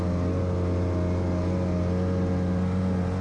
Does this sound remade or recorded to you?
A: recorded